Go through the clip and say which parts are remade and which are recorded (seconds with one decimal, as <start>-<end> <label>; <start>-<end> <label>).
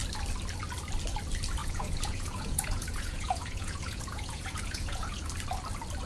0.0-1.6 recorded; 1.6-5.3 remade; 5.3-6.1 recorded